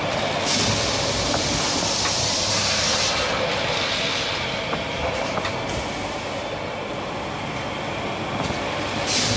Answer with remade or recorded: recorded